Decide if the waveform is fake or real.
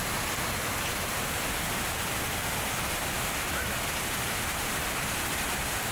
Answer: real